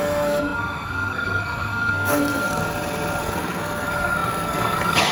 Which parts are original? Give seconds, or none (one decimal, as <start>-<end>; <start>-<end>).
2.6-3.2